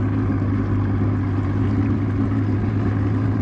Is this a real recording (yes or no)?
yes